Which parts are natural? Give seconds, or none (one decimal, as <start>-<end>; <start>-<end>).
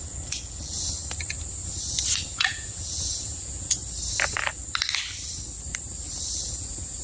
1.0-2.3; 3.8-6.4